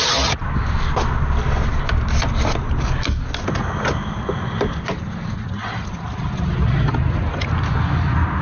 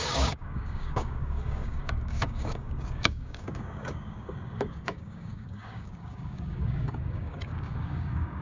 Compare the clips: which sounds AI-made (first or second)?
second